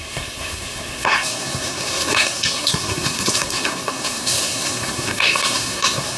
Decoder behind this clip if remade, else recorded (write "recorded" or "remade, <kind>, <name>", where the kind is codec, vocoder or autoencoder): remade, codec, SNAC